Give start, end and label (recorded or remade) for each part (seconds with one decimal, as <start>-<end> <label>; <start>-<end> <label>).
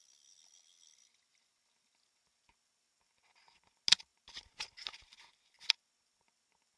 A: 0.0-6.8 recorded